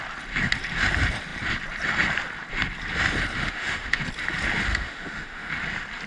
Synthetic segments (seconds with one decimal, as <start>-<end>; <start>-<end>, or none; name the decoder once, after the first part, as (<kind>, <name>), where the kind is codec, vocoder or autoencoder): 3.4-4.0 (autoencoder, DAC-VAE); 4.7-5.5